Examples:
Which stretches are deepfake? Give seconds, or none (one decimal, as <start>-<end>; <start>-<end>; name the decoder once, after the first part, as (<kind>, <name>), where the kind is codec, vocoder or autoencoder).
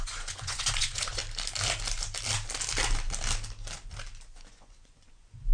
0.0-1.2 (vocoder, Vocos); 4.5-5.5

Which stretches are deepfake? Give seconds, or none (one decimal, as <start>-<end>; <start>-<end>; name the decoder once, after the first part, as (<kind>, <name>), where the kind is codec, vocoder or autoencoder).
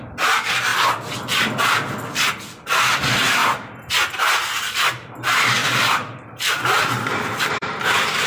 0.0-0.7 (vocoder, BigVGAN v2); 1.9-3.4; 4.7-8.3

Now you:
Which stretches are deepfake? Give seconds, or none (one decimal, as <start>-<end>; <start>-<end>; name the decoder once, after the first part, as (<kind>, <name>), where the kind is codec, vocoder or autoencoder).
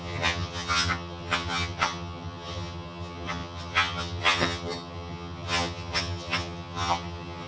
0.0-7.5 (vocoder, HiFi-GAN)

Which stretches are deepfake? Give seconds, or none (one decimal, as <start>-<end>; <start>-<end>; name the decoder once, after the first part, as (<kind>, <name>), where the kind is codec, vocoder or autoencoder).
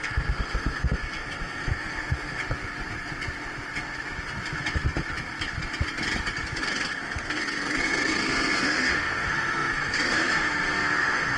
0.0-2.4 (codec, SNAC); 6.6-11.4